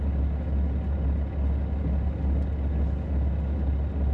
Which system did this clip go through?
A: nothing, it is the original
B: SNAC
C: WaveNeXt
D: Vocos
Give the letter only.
A